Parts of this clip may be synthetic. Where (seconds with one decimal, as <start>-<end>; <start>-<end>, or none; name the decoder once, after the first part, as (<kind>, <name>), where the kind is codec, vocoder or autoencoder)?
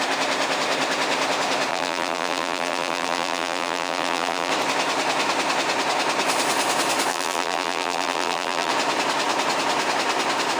1.7-4.5 (vocoder, BigVGAN v2); 7.1-8.7